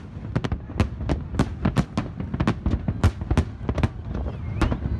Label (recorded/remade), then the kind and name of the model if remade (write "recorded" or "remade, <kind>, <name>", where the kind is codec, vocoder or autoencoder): recorded